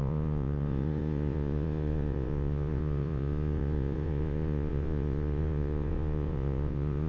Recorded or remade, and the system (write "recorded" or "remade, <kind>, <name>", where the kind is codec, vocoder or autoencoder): remade, vocoder, Vocos